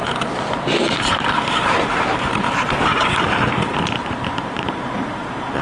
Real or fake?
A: fake